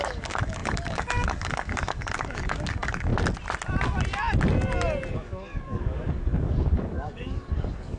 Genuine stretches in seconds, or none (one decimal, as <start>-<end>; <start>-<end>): 3.1-5.1